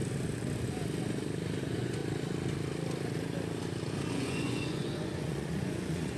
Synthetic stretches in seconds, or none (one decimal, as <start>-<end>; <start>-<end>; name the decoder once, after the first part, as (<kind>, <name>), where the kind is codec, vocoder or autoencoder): 1.6-2.0 (vocoder, Vocos); 4.1-6.2